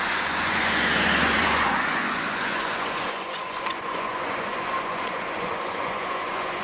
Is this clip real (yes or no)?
no